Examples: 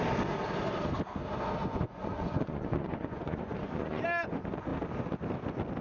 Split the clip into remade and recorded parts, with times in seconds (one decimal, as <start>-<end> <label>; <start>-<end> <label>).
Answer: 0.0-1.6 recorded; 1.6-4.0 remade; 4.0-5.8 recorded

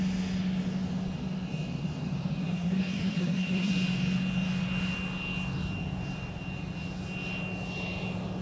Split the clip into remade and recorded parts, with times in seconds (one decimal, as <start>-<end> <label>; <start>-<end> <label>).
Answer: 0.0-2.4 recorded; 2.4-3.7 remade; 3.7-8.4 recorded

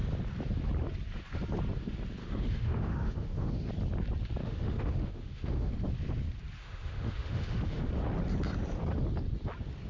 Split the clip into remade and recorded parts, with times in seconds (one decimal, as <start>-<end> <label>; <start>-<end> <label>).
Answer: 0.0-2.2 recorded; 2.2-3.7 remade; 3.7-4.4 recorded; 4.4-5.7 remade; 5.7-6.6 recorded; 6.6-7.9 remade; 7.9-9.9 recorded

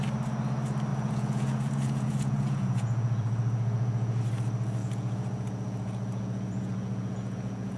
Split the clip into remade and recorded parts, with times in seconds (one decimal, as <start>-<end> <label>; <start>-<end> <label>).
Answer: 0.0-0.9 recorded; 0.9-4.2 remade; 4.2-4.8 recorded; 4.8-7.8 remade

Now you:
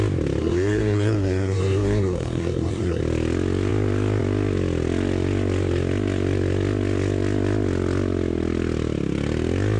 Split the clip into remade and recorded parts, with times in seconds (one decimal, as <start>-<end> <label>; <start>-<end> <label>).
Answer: 0.0-0.4 recorded; 0.4-3.0 remade; 3.0-9.8 recorded

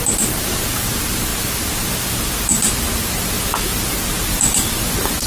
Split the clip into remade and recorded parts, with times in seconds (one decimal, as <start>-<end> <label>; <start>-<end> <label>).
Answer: 0.0-5.3 recorded

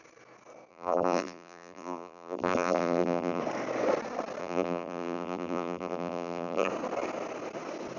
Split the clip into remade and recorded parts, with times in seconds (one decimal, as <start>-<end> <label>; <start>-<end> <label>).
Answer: 0.0-0.7 recorded; 0.7-3.4 remade; 3.4-4.4 recorded; 4.4-6.7 remade; 6.7-8.0 recorded

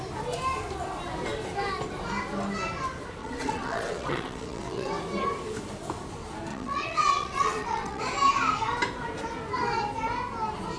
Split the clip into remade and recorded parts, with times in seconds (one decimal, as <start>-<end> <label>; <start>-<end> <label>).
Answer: 0.0-3.2 recorded; 3.2-4.9 remade; 4.9-6.5 recorded; 6.5-8.0 remade; 8.0-10.8 recorded